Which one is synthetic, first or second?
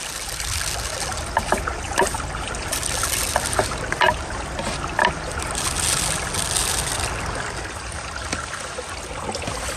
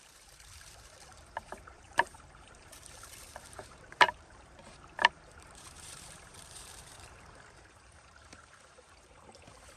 second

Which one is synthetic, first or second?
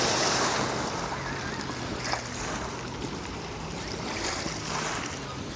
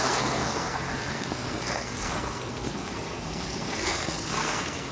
second